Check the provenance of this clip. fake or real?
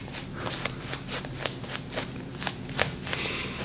real